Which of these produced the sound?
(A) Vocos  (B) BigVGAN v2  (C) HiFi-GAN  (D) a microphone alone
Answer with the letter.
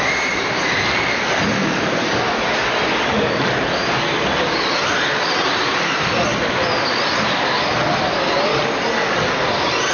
D